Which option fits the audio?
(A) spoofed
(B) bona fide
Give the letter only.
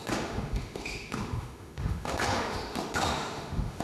A